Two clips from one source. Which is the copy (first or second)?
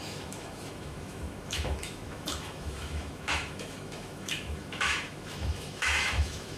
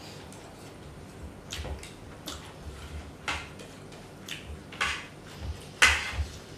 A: first